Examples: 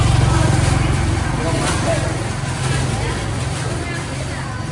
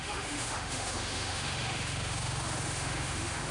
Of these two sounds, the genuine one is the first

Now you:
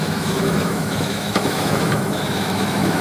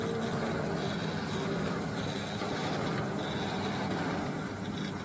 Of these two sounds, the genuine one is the second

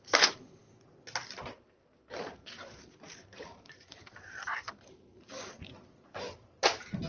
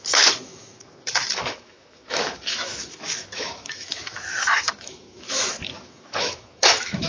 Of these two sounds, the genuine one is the first